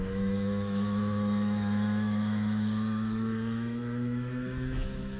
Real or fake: fake